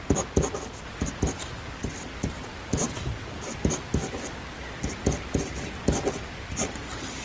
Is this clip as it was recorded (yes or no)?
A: yes